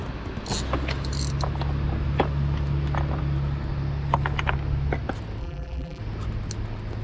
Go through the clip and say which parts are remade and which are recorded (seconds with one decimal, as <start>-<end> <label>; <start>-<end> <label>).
0.0-5.4 recorded; 5.4-6.0 remade; 6.0-7.0 recorded